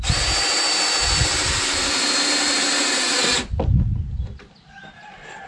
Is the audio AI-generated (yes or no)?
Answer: no